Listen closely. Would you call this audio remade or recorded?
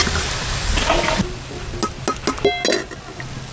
recorded